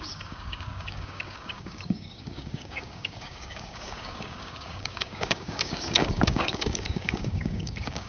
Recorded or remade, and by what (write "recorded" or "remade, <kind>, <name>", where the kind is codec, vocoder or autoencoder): remade, codec, DAC